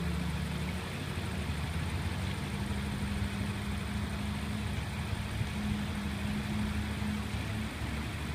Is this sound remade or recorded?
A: recorded